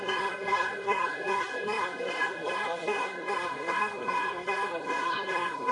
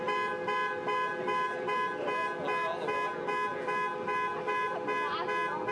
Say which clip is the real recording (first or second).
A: second